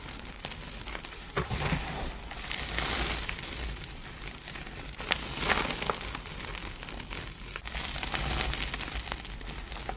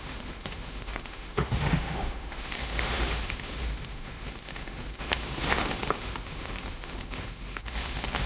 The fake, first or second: second